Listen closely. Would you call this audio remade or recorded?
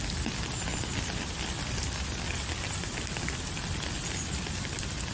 recorded